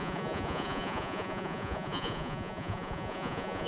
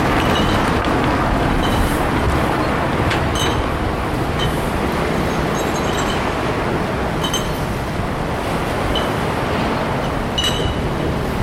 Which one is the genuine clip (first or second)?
second